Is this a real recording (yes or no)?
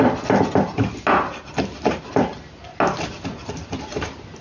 yes